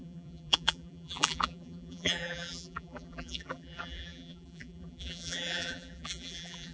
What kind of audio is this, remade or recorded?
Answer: remade